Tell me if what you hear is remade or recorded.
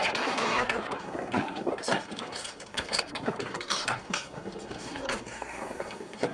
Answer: remade